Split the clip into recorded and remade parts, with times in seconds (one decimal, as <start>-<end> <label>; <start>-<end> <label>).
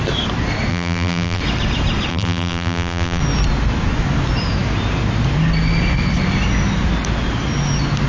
0.0-0.7 recorded; 0.7-1.4 remade; 1.4-2.1 recorded; 2.1-3.2 remade; 3.2-8.1 recorded